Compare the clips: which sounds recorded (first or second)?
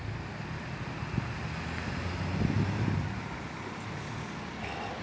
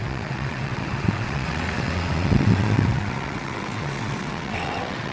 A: first